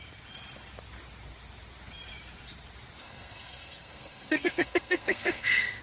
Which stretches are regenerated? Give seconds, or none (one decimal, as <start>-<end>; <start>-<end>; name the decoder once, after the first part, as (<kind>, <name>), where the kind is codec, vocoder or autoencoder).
3.0-5.8 (codec, SNAC)